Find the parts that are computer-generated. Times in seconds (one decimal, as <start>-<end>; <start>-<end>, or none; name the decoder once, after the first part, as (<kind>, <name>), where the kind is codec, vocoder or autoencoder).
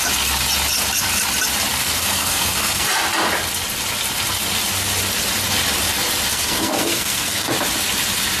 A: 1.8-2.9 (codec, SNAC); 6.3-7.5